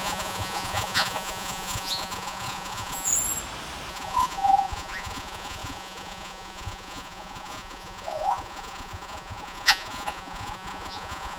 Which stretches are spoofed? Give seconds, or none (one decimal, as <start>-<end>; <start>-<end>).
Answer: 0.0-3.1; 3.9-11.4